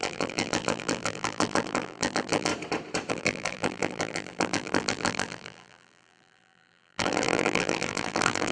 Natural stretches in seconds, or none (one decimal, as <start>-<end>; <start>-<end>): 2.5-3.1